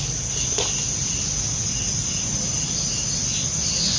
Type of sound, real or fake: real